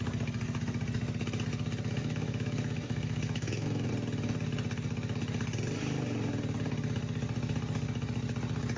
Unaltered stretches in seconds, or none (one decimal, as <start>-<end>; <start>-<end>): 0.0-2.0; 3.9-8.8